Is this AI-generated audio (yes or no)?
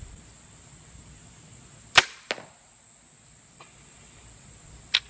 no